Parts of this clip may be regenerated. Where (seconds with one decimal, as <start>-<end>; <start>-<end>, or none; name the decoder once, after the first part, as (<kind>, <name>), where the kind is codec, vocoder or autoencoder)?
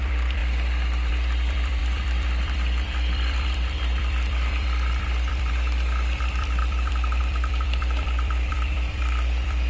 0.0-0.4 (vocoder, BigVGAN v2); 1.1-9.7